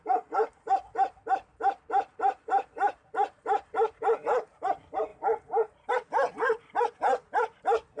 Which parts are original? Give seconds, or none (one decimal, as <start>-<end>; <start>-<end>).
0.0-8.0